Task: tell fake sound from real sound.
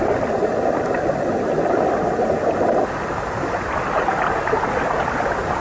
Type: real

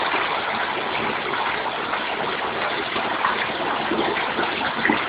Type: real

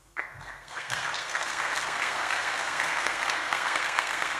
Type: fake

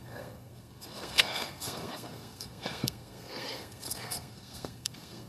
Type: fake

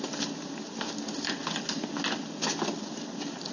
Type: real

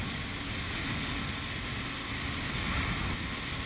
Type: real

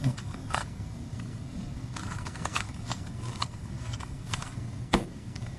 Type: fake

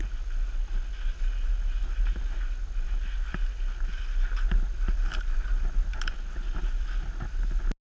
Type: real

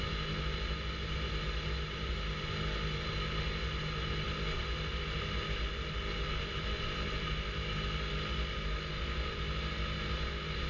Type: real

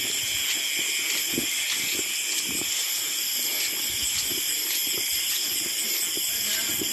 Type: real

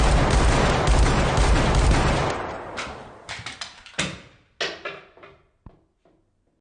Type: real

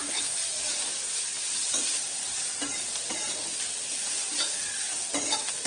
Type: real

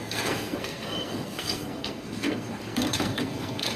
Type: fake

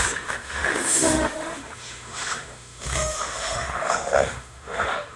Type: fake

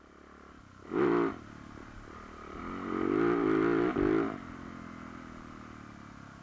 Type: real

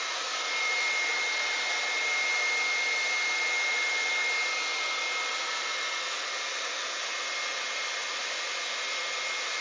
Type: real